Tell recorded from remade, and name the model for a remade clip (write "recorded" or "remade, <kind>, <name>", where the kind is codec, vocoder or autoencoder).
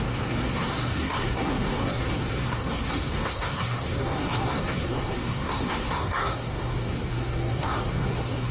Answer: remade, codec, SNAC